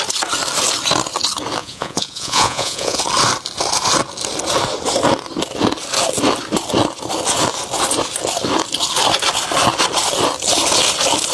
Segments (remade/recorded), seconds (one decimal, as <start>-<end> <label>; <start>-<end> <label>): 0.0-1.6 recorded; 1.6-3.0 remade; 3.0-11.3 recorded